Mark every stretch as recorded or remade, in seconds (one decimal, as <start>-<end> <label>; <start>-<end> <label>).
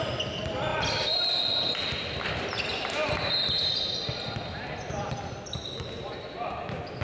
0.0-0.7 recorded; 0.7-4.9 remade; 4.9-7.0 recorded